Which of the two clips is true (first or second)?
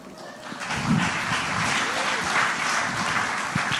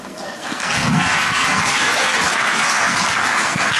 first